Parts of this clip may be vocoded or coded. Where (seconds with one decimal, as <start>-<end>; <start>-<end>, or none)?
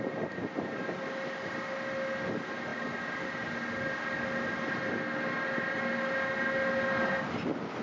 none